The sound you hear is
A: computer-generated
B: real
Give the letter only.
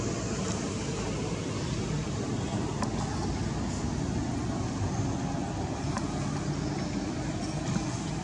B